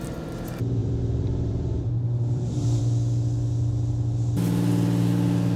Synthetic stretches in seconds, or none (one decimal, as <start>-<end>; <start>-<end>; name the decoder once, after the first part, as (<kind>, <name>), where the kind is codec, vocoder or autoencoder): 0.8-2.8 (vocoder, BigVGAN v2)